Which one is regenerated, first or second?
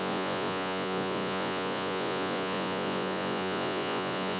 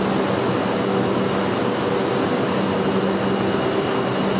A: first